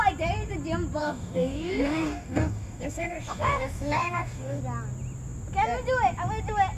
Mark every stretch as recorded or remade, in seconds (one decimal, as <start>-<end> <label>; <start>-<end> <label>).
0.0-1.0 recorded; 1.0-4.6 remade; 4.6-6.8 recorded